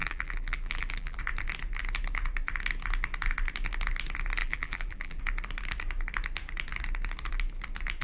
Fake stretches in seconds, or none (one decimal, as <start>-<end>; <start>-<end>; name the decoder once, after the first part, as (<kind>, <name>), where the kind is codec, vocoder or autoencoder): 0.0-1.2 (vocoder, BigVGAN v2); 4.4-5.2